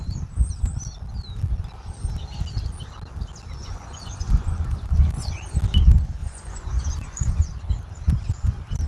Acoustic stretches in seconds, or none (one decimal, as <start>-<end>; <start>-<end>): 0.0-3.6; 5.3-6.2; 7.4-8.9